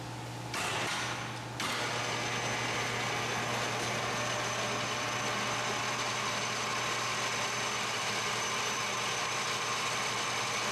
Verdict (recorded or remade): recorded